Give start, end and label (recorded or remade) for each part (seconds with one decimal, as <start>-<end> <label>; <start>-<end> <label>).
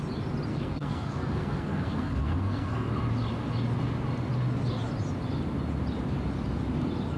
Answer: 0.0-0.5 recorded; 0.5-2.9 remade; 2.9-7.2 recorded